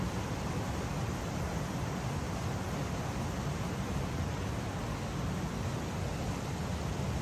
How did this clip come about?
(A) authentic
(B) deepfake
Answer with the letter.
A